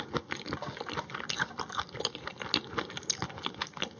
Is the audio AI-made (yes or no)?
no